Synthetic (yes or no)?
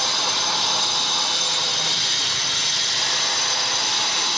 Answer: no